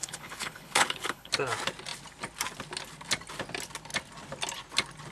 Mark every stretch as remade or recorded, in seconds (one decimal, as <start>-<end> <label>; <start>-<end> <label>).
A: 0.0-1.3 remade; 1.3-5.1 recorded